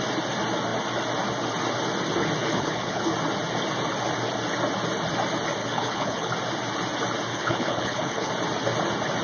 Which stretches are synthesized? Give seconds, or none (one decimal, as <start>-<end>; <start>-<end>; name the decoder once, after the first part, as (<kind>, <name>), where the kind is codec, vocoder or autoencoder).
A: 2.4-3.0 (codec, HILCodec); 5.6-6.3; 7.3-8.3